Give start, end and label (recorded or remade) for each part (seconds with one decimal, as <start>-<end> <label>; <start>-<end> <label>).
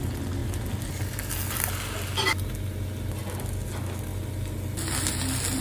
0.0-5.6 recorded